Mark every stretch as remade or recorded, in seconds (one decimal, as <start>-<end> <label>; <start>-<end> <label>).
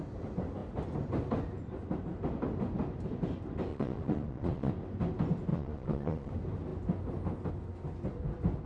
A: 0.0-3.7 recorded; 3.7-4.7 remade; 4.7-5.5 recorded; 5.5-6.3 remade; 6.3-8.7 recorded